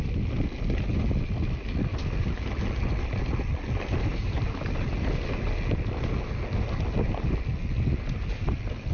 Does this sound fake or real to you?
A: real